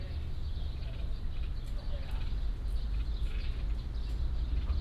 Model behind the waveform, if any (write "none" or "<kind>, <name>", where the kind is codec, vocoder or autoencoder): none